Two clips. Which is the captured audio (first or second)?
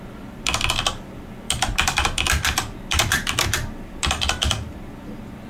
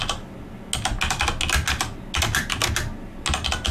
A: second